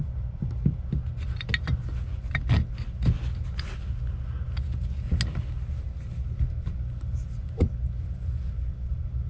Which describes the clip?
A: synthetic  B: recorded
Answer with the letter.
B